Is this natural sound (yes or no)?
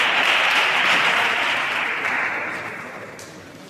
no